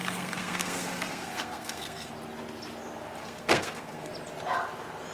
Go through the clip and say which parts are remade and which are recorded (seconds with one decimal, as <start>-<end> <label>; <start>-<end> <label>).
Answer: 0.0-2.1 remade; 2.1-3.2 recorded; 3.2-4.1 remade; 4.1-5.1 recorded